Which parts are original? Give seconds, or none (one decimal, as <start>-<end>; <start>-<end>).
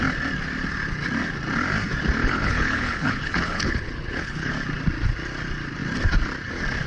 0.0-2.2; 4.5-6.9